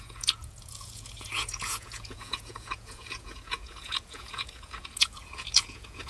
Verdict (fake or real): fake